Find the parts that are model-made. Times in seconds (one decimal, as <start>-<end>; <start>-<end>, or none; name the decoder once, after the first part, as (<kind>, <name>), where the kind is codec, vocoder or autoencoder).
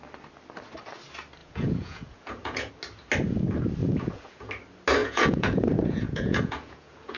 1.4-2.7 (vocoder, Vocos); 3.8-4.5; 5.0-7.2